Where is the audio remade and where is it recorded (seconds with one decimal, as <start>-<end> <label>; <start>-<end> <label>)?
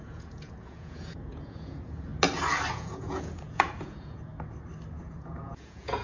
0.0-2.1 remade; 2.1-2.7 recorded; 2.7-4.3 remade; 4.3-5.0 recorded; 5.0-6.0 remade